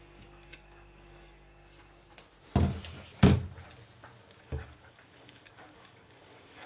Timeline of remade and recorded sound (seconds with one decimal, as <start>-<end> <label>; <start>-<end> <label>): 0.0-1.5 remade; 1.5-4.4 recorded; 4.4-6.7 remade